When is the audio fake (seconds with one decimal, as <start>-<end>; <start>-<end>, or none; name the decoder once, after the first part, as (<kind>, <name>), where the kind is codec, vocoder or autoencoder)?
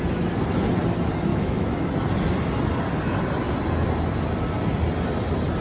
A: 1.3-1.9 (autoencoder, DAC-VAE)